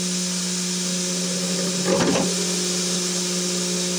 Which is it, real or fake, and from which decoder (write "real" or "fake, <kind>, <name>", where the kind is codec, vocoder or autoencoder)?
real